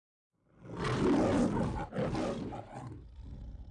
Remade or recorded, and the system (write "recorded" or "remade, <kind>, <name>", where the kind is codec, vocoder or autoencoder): recorded